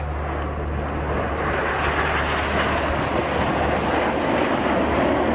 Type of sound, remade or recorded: recorded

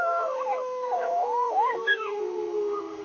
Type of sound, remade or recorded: remade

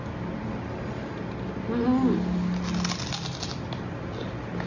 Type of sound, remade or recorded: recorded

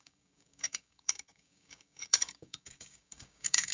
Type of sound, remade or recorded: remade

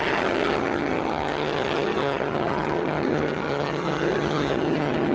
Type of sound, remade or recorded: remade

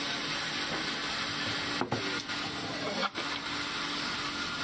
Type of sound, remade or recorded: recorded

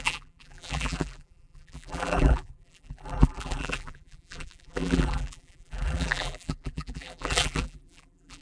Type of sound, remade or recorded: remade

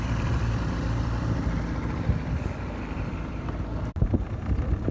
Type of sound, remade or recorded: remade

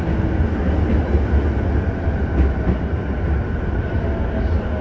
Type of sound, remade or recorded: recorded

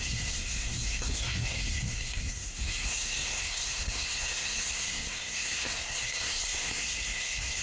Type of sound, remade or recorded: remade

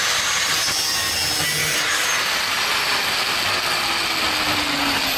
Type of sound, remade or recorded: recorded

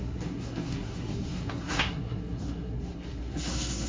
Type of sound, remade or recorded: remade